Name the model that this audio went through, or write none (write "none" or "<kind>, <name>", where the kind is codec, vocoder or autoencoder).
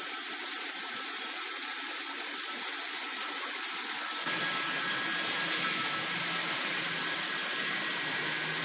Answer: none